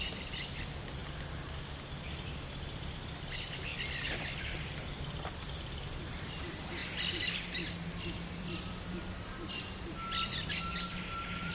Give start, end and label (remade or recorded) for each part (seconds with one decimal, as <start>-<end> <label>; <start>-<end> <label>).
0.0-1.0 remade; 1.0-2.1 recorded; 2.1-3.7 remade; 3.7-5.0 recorded; 5.0-11.5 remade